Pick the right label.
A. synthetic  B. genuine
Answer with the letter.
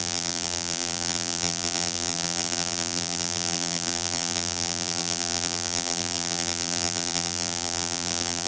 A